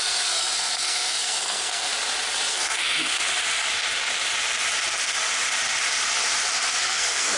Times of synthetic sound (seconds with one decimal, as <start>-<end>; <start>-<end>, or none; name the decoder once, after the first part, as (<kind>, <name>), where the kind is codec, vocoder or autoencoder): 0.0-1.9 (codec, SNAC); 2.5-3.3; 6.8-7.4